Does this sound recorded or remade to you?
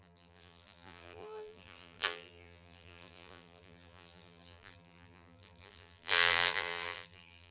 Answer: remade